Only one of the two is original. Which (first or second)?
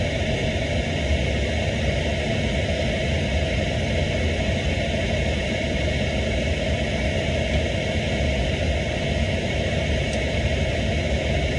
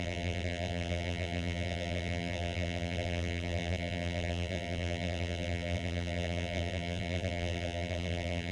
first